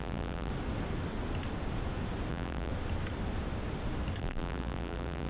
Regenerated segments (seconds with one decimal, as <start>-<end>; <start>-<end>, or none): 0.0-0.5; 2.3-2.7; 4.2-5.3